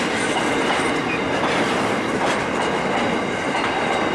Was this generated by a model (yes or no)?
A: no